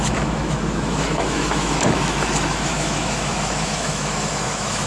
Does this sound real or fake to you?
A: fake